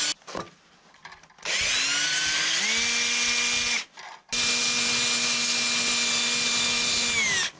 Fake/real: real